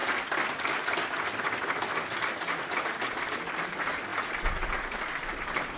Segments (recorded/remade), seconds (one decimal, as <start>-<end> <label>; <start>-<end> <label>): 0.0-5.8 recorded